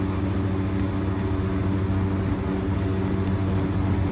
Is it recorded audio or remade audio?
recorded